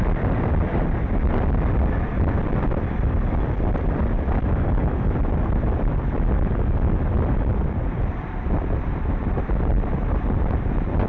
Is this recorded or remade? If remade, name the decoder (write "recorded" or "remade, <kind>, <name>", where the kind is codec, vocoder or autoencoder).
remade, vocoder, BigVGAN v2